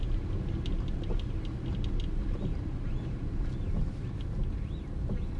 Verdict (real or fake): real